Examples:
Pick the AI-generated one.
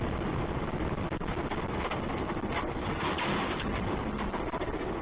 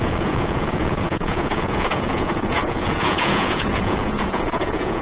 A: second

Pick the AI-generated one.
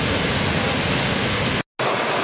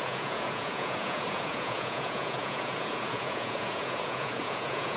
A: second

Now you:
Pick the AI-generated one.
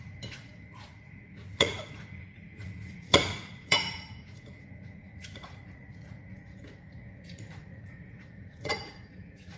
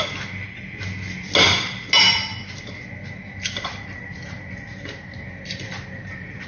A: first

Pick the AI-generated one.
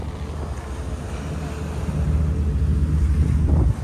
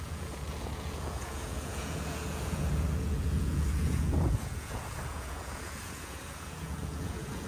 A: second